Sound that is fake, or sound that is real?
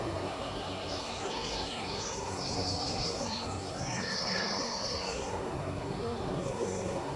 fake